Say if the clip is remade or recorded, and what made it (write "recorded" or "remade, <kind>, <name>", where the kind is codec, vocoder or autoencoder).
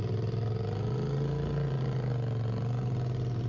recorded